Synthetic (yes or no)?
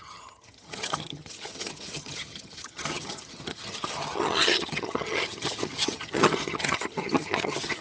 yes